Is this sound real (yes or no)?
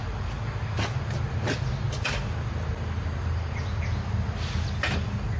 yes